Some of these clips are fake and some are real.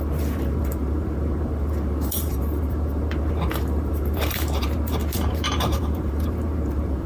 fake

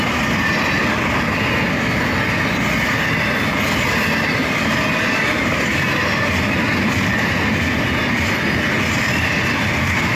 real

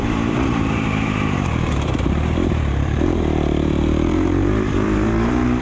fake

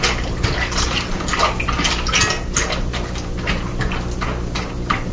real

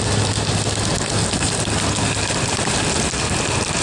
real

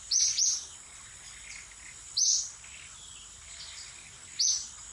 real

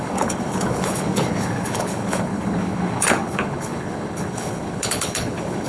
fake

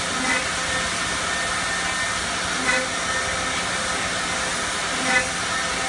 real